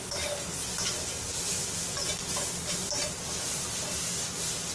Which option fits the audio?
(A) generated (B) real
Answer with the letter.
B